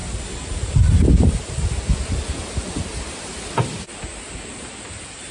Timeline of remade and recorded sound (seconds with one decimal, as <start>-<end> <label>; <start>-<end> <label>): 0.0-4.5 recorded; 4.5-5.3 remade